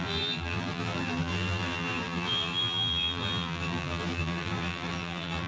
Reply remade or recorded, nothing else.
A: remade